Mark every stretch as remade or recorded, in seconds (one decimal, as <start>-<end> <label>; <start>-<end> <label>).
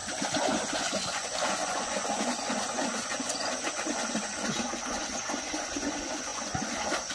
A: 0.0-7.1 remade